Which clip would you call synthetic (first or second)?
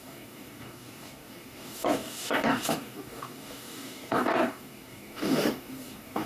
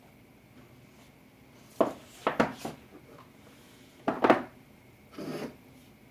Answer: first